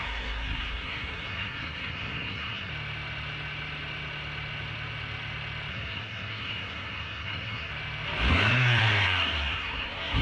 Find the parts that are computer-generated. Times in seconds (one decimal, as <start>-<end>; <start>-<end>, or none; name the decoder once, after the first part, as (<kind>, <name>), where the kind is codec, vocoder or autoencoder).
0.0-2.7 (codec, SNAC); 5.7-7.7; 8.3-10.2